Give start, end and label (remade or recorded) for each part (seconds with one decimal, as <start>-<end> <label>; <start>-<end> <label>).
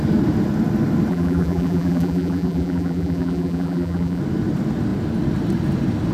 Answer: 0.0-1.1 recorded; 1.1-4.2 remade; 4.2-6.1 recorded